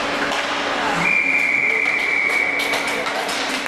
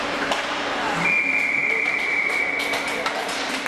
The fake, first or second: second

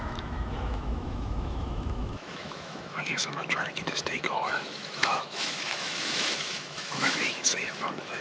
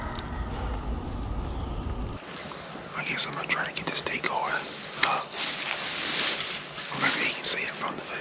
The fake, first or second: first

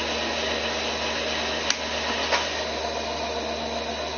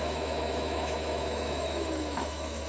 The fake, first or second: second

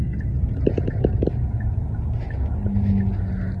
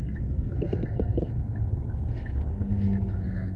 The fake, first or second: second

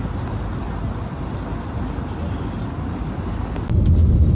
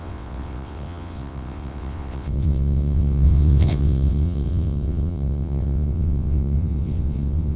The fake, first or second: second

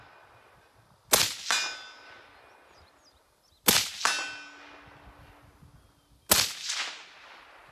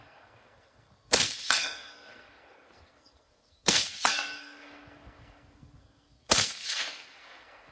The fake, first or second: second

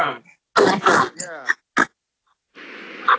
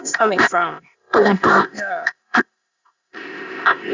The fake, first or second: second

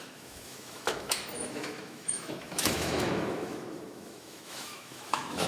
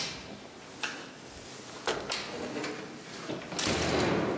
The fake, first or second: first